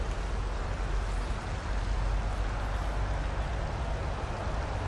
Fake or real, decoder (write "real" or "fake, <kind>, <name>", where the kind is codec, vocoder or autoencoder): real